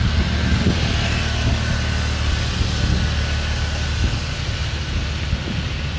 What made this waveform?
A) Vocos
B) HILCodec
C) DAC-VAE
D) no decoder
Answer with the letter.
D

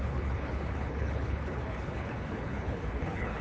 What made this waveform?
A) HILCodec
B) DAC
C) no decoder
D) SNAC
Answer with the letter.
A